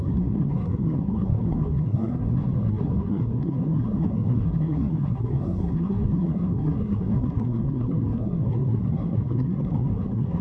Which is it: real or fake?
fake